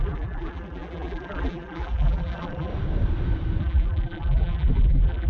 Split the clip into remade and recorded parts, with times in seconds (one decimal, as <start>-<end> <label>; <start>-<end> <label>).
0.0-2.7 remade; 2.7-3.6 recorded; 3.6-5.3 remade